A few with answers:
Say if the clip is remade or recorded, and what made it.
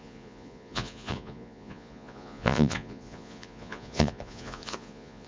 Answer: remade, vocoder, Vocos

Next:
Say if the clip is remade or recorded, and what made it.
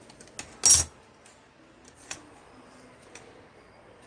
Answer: recorded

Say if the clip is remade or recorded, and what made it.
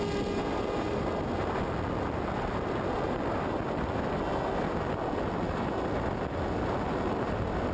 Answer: recorded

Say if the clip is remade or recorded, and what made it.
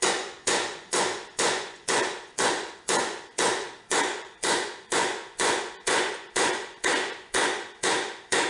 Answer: remade, vocoder, Vocos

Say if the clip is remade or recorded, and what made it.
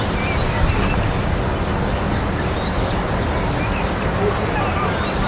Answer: recorded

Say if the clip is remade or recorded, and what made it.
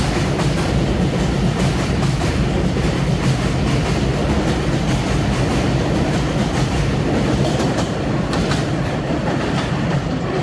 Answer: recorded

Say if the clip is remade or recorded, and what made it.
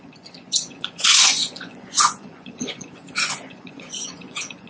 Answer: remade, vocoder, Vocos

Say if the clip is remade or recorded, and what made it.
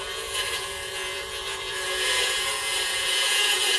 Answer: remade, vocoder, Vocos